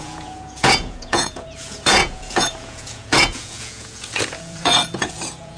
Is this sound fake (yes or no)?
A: yes